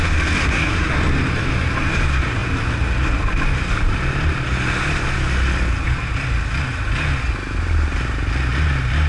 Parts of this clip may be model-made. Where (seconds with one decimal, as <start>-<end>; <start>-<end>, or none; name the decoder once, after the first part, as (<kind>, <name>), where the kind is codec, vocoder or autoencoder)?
0.4-0.9 (codec, SNAC)

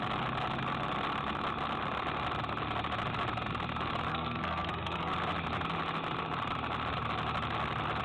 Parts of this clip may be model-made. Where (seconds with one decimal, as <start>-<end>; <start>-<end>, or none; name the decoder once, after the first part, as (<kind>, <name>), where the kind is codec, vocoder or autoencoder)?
4.1-5.1 (codec, SNAC)

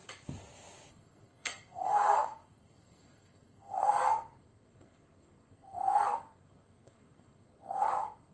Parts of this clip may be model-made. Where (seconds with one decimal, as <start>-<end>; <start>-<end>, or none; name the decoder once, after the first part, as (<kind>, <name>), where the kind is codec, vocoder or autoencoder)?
0.9-8.3 (codec, SNAC)

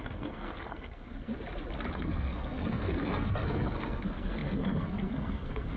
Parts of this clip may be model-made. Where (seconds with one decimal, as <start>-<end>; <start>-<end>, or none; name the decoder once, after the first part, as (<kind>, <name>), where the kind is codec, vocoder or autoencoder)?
0.0-1.3 (codec, SNAC); 1.9-5.8

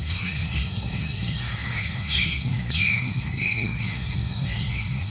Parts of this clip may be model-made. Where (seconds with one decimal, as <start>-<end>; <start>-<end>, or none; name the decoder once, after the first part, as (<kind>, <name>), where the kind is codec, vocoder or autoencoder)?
0.0-5.1 (codec, SNAC)

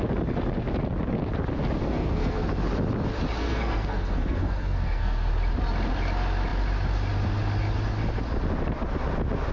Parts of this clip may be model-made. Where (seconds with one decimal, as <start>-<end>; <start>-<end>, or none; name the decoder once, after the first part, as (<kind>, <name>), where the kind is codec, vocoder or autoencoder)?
1.8-2.5 (codec, SNAC); 3.4-5.3

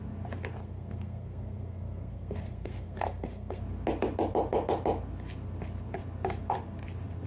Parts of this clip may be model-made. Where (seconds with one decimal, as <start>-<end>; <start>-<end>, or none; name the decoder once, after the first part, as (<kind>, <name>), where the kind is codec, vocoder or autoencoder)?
0.6-3.6 (codec, SNAC)